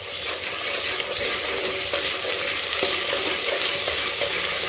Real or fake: real